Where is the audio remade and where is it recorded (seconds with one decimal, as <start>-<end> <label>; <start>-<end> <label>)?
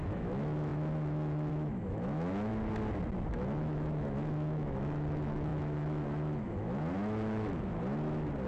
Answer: 0.0-2.5 remade; 2.5-3.3 recorded; 3.3-7.7 remade; 7.7-8.5 recorded